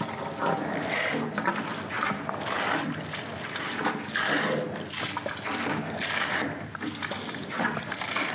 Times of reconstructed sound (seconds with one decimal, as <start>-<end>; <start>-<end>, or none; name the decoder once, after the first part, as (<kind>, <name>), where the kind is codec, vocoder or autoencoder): none